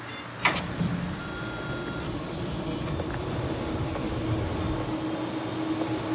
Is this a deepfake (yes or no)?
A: no